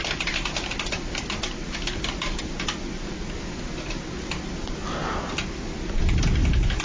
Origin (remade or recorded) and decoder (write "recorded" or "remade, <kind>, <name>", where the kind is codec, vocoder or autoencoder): recorded